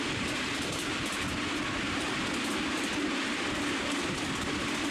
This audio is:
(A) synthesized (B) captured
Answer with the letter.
B